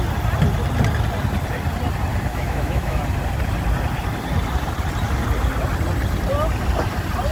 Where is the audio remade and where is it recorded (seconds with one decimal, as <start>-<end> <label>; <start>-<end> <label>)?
0.0-2.3 recorded; 2.3-3.0 remade; 3.0-7.3 recorded